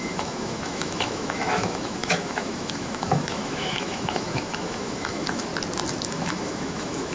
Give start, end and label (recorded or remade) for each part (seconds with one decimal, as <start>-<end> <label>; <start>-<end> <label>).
0.0-5.5 remade; 5.5-6.0 recorded; 6.0-7.1 remade